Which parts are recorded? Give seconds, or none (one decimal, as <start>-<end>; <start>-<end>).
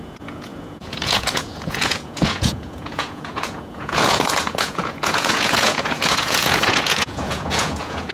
none